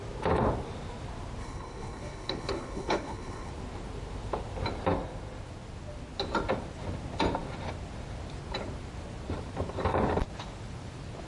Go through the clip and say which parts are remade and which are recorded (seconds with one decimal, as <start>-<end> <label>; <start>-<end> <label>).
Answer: 0.0-1.4 recorded; 1.4-3.5 remade; 3.5-11.3 recorded